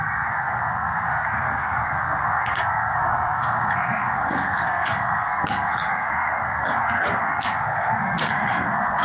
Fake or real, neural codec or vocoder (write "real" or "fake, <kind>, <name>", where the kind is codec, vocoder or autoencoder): fake, codec, SNAC